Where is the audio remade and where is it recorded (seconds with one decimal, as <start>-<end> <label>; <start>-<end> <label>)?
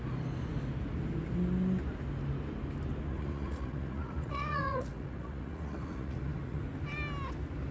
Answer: 0.0-3.1 recorded; 3.1-6.6 remade; 6.6-7.7 recorded